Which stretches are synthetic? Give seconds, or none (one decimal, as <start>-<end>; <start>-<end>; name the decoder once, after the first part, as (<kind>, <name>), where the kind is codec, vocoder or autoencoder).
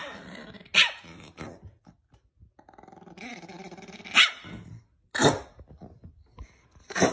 none